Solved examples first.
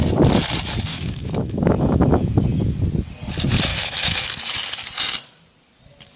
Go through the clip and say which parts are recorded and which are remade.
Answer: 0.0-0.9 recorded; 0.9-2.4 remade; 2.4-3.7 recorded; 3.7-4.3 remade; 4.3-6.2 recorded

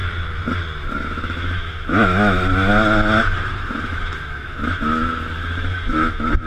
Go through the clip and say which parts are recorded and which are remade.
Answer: 0.0-0.9 recorded; 0.9-2.7 remade; 2.7-3.4 recorded; 3.4-6.5 remade

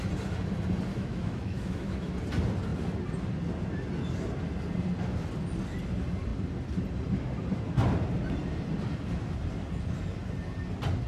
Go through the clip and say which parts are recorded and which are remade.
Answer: 0.0-0.9 recorded; 0.9-2.1 remade; 2.1-11.1 recorded

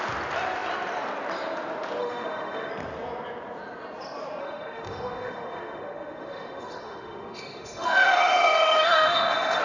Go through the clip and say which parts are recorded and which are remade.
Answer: 0.0-2.0 recorded; 2.0-2.7 remade; 2.7-4.4 recorded; 4.4-9.6 remade

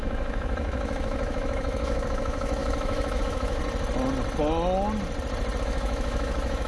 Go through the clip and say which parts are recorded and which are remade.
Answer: 0.0-3.6 remade; 3.6-5.6 recorded; 5.6-6.7 remade

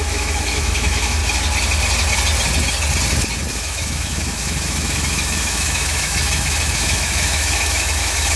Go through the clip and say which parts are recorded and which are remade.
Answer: 0.0-1.2 remade; 1.2-3.5 recorded; 3.5-8.4 remade

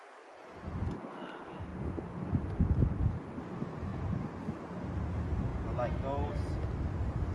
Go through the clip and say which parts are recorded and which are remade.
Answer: 0.0-7.3 recorded

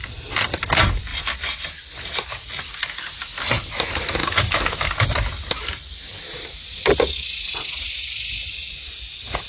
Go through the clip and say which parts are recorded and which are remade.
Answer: 0.0-4.2 recorded; 4.2-4.9 remade; 4.9-9.5 recorded